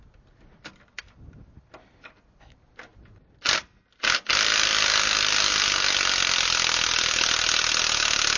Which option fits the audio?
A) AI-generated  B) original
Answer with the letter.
B